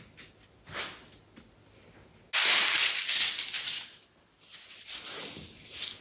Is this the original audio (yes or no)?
yes